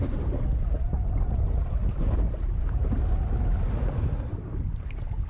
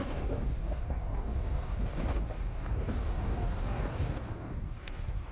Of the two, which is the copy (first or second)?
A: second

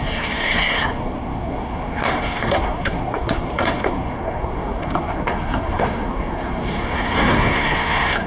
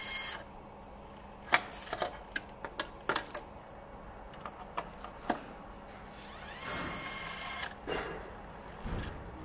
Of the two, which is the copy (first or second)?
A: first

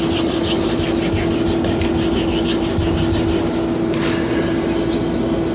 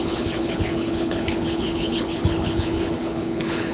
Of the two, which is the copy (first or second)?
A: second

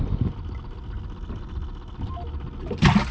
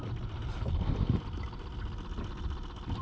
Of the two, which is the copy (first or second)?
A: second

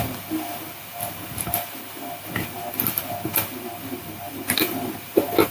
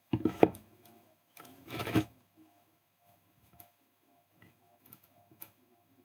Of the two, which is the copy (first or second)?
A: second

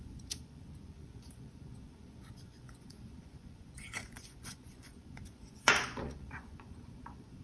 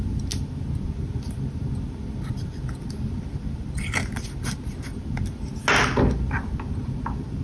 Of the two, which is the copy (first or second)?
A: first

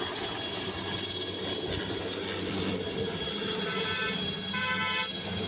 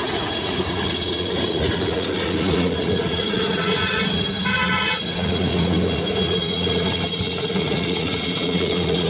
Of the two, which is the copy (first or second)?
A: second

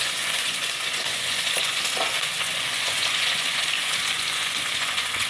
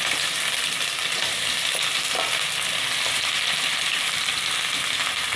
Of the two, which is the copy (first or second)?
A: first